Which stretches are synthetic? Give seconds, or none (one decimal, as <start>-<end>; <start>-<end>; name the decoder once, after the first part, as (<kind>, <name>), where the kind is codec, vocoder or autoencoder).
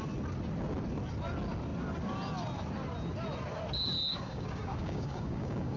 4.1-5.8 (codec, DAC)